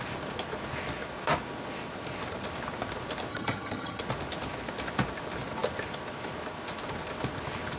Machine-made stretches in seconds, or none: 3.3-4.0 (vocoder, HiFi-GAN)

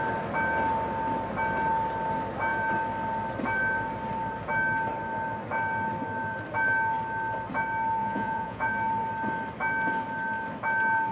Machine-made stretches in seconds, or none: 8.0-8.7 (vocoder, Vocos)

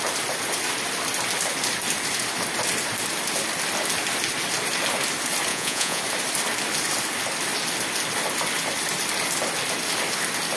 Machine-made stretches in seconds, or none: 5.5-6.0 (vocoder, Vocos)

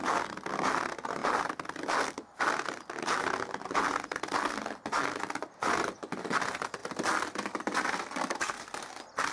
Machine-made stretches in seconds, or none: none

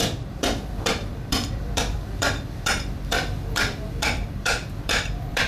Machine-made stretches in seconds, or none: 0.0-5.5 (vocoder, BigVGAN v2)

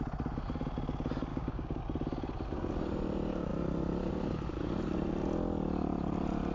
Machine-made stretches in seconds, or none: 1.3-1.8 (codec, DAC)

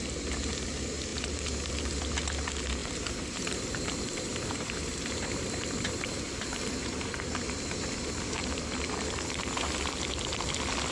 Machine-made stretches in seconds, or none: 1.1-1.7 (vocoder, BigVGAN v2); 2.8-3.6; 4.3-8.4

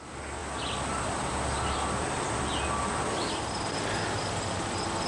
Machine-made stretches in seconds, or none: none